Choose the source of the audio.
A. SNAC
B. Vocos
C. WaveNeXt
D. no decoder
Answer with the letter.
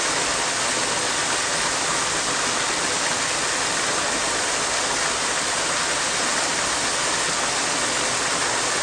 D